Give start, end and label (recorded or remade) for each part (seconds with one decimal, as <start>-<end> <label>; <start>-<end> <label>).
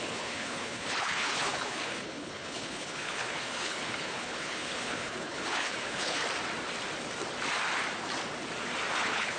0.0-6.2 remade; 6.2-9.0 recorded; 9.0-9.4 remade